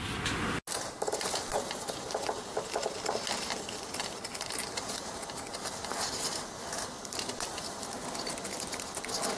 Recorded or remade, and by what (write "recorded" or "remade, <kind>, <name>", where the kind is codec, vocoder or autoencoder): recorded